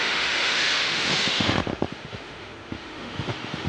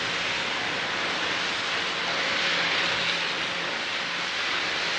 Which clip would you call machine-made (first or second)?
first